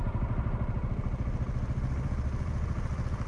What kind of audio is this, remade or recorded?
recorded